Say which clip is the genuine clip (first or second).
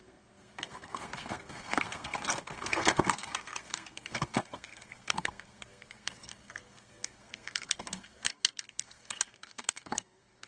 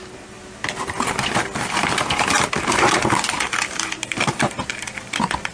second